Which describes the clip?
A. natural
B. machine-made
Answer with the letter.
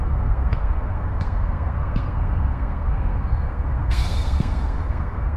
B